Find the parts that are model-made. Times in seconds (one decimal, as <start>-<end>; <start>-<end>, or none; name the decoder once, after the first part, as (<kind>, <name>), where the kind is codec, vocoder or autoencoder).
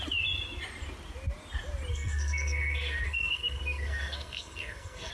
1.9-5.1 (codec, SNAC)